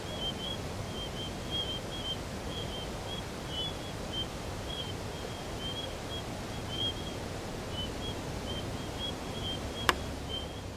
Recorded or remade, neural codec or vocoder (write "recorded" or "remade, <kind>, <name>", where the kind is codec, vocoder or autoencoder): recorded